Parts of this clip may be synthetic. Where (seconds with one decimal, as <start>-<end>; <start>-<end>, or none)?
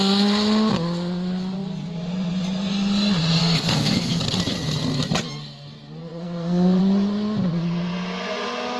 3.4-4.2; 6.0-6.8